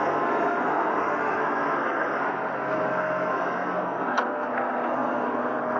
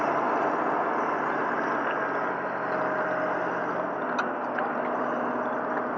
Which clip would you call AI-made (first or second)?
first